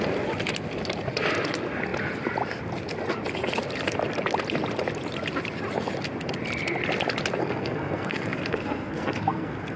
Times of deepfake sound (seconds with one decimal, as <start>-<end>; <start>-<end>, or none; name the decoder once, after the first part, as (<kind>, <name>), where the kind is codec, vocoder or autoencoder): 7.4-9.8 (codec, SNAC)